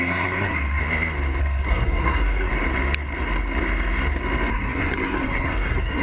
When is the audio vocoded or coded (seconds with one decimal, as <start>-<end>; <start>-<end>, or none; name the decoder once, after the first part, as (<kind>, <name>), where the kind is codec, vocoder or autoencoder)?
0.0-0.8 (codec, SNAC); 1.4-2.5; 4.5-6.0

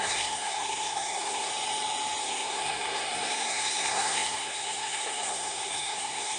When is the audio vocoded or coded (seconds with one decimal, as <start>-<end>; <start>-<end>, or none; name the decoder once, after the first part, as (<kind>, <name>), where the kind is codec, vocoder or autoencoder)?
0.0-1.5 (codec, SNAC); 2.2-6.4

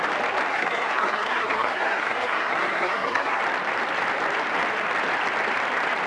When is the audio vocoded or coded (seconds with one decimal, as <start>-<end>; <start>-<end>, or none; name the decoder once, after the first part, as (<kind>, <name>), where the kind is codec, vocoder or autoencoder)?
0.5-3.4 (codec, SNAC)

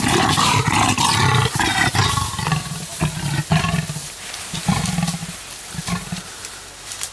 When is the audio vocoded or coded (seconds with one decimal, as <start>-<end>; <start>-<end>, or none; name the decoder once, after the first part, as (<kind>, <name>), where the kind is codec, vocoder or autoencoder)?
none

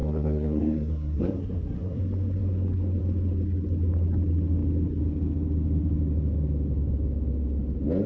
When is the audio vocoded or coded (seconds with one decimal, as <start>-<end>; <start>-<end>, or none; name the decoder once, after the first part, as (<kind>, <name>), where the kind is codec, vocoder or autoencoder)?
0.0-2.0 (codec, SNAC)

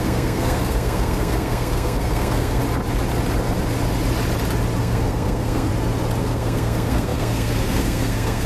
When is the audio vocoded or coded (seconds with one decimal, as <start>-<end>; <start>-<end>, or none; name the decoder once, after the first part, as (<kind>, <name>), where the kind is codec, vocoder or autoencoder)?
0.0-2.6 (codec, SNAC); 4.8-5.7; 6.2-8.5